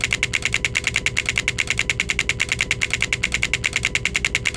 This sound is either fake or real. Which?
real